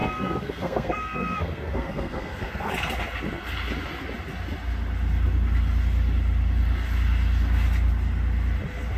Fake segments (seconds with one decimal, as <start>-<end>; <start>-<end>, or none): 0.0-2.7